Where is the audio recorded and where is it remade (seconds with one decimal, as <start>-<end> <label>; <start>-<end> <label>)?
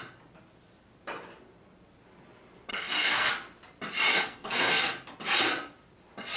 0.0-2.7 recorded; 2.7-3.3 remade; 3.3-4.1 recorded; 4.1-4.9 remade; 4.9-6.4 recorded